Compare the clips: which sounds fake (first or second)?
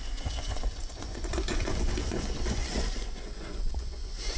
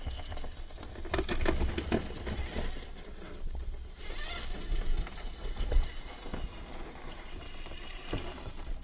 first